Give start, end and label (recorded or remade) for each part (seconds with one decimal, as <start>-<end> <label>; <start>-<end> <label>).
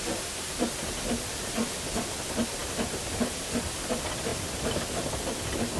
0.0-5.8 recorded